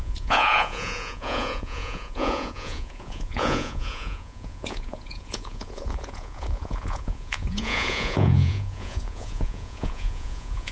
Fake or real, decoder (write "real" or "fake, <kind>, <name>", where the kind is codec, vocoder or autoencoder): fake, vocoder, Vocos